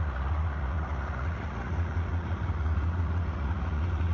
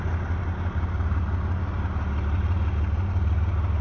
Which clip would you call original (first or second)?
second